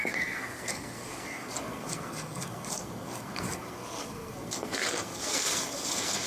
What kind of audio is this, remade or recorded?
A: remade